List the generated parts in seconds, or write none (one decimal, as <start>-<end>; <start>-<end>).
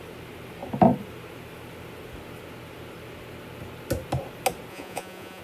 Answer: 4.7-5.4